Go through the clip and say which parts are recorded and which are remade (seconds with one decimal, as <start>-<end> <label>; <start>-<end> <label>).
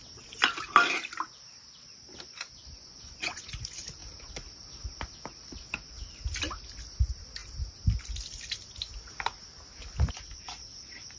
0.0-2.6 recorded; 2.6-3.5 remade; 3.5-11.2 recorded